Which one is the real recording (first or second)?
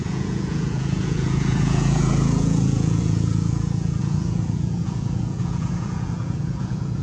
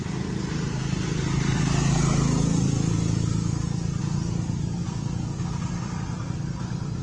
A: second